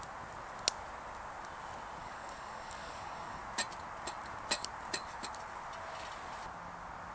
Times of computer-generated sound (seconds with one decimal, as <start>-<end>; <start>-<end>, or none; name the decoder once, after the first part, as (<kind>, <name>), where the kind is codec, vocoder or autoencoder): 2.0-3.4 (codec, DAC)

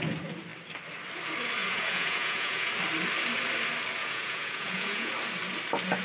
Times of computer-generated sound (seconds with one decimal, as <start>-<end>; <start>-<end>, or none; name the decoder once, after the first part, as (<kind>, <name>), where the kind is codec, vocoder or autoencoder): 1.6-2.7 (vocoder, Vocos); 4.0-5.1

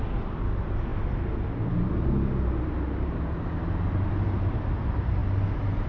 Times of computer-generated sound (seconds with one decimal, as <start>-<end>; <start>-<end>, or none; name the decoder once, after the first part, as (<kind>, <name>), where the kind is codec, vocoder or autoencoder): 0.9-2.1 (vocoder, BigVGAN v2)